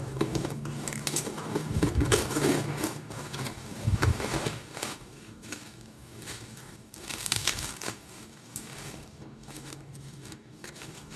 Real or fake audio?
fake